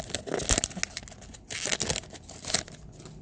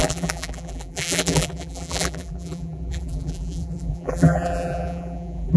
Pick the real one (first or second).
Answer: first